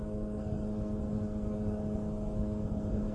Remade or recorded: remade